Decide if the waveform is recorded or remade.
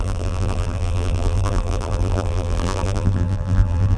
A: remade